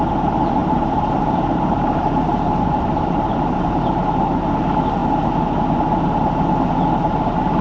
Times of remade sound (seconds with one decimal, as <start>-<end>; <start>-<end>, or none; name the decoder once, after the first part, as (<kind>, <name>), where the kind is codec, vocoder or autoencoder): 0.6-3.8 (vocoder, BigVGAN v2)